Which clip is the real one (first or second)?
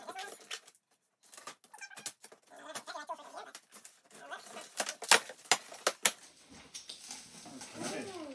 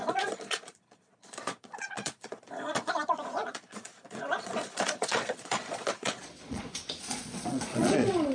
first